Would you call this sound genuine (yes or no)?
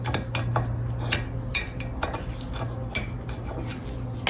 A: yes